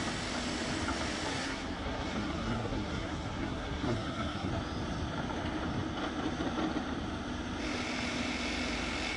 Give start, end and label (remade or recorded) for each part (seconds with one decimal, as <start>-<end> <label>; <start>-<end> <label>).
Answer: 0.0-1.3 recorded; 1.3-4.5 remade; 4.5-9.2 recorded